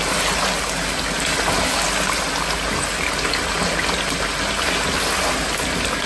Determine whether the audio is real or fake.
real